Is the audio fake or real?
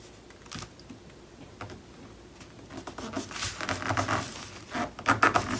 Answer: real